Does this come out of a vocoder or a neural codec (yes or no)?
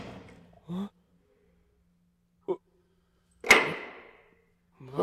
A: no